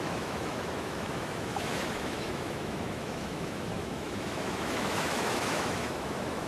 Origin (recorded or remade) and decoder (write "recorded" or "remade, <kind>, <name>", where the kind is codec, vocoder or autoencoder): remade, autoencoder, DAC-VAE